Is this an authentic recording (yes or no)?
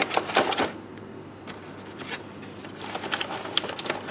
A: yes